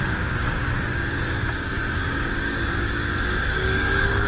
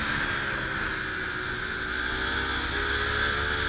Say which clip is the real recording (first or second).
second